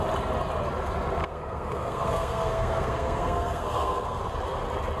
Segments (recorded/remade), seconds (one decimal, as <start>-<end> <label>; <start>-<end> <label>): 0.0-1.2 recorded; 1.2-4.2 remade; 4.2-5.0 recorded

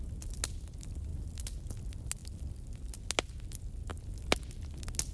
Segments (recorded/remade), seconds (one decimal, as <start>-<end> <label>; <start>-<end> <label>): 0.0-5.1 recorded

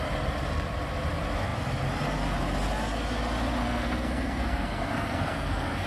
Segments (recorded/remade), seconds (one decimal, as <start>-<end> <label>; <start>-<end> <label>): 0.0-3.6 recorded; 3.6-5.9 remade

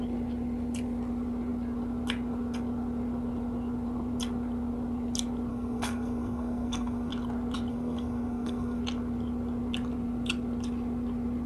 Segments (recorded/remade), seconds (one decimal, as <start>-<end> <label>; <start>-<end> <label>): 0.0-5.5 recorded; 5.5-7.1 remade; 7.1-7.7 recorded; 7.7-8.8 remade; 8.8-11.5 recorded

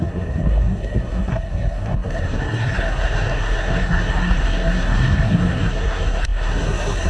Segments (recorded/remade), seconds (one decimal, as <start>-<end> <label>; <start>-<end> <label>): 0.0-7.1 remade